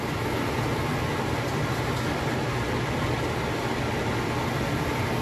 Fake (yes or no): no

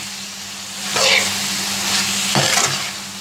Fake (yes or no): no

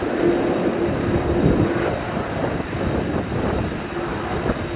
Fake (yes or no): no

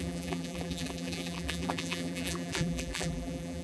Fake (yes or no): yes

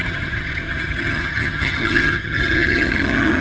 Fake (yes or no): yes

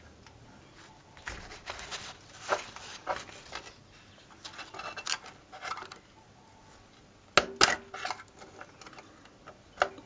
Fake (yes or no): no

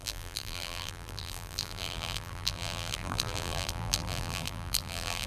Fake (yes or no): yes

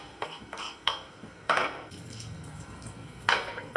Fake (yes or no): yes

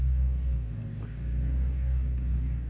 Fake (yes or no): yes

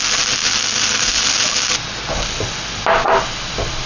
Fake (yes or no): no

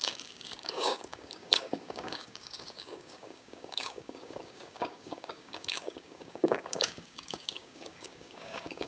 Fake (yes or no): yes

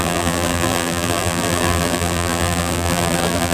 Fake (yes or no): yes